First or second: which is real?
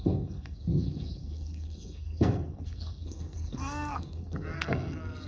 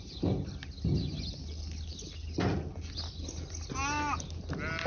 second